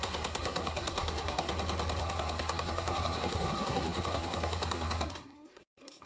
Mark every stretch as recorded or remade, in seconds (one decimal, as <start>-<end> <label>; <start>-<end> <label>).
0.0-1.5 remade; 1.5-2.0 recorded; 2.0-6.1 remade